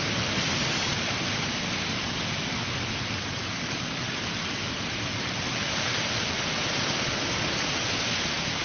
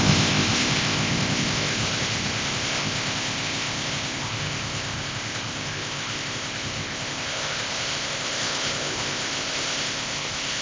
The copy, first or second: second